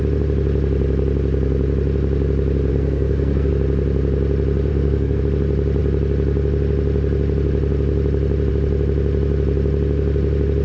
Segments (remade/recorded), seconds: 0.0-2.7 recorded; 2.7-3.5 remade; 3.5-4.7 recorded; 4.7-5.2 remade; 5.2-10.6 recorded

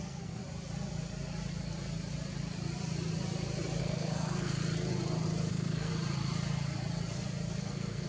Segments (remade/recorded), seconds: 0.0-0.4 remade; 0.4-3.8 recorded; 3.8-4.6 remade; 4.6-5.5 recorded; 5.5-5.9 remade; 5.9-7.6 recorded; 7.6-8.1 remade